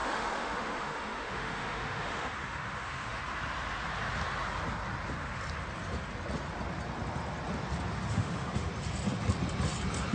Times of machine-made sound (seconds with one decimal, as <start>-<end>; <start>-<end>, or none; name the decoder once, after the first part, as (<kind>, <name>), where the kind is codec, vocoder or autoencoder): 0.0-3.2 (autoencoder, DAC-VAE); 8.1-8.7